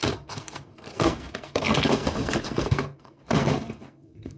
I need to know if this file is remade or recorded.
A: remade